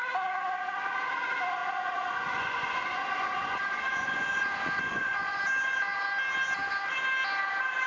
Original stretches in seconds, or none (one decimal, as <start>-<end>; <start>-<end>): 0.0-1.6; 5.4-7.9